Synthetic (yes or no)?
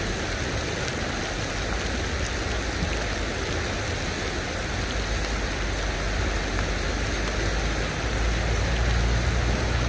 no